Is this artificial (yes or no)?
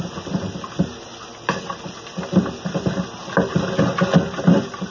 no